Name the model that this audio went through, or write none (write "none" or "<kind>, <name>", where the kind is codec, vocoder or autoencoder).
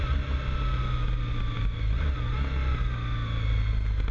none